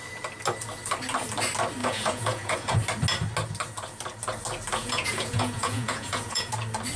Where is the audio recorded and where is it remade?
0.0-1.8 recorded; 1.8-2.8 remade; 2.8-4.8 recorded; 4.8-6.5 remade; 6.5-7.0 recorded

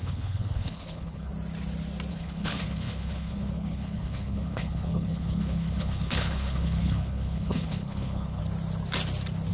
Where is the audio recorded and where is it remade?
0.0-1.3 remade; 1.3-2.1 recorded; 2.1-8.4 remade; 8.4-9.5 recorded

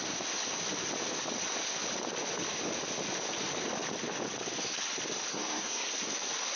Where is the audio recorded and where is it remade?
0.0-5.3 recorded; 5.3-5.9 remade; 5.9-6.6 recorded

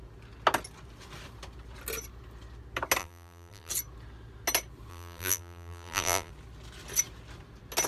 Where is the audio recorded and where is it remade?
0.0-3.0 recorded; 3.0-3.7 remade; 3.7-4.9 recorded; 4.9-6.3 remade; 6.3-7.9 recorded